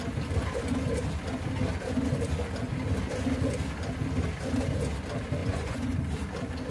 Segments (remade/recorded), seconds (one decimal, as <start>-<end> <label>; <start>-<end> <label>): 0.0-5.4 recorded; 5.4-6.0 remade; 6.0-6.7 recorded